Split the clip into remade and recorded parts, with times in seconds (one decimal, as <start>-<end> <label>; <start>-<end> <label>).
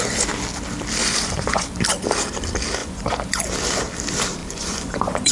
0.0-1.0 recorded; 1.0-1.7 remade; 1.7-2.8 recorded; 2.8-3.4 remade; 3.4-4.4 recorded; 4.4-5.3 remade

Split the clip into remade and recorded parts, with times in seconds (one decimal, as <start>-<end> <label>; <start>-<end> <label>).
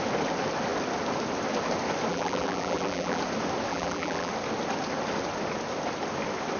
0.0-2.1 recorded; 2.1-3.2 remade; 3.2-3.7 recorded; 3.7-4.3 remade; 4.3-6.6 recorded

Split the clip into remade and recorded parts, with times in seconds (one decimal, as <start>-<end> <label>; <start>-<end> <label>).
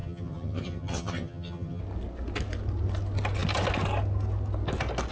0.0-1.8 remade; 1.8-5.1 recorded